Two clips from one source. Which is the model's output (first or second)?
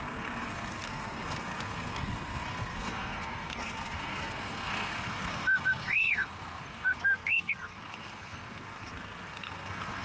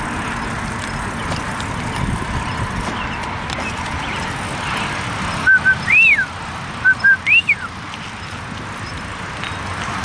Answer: first